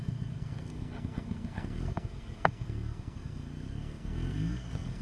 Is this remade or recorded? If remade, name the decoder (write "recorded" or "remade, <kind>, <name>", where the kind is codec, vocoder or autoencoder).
remade, codec, SNAC